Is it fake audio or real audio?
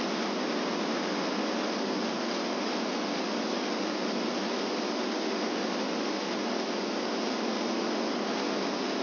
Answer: real